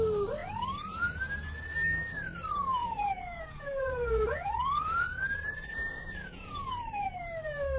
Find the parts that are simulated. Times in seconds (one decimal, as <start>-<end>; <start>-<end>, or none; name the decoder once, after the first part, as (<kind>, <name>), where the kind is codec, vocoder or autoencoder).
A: 2.8-6.7 (vocoder, Vocos)